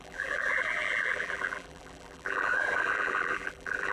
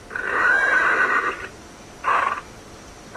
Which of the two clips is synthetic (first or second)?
first